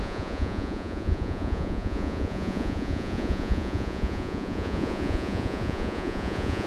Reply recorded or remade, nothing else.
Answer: remade